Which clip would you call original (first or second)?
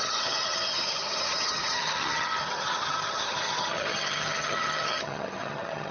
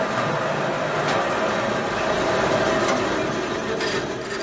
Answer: second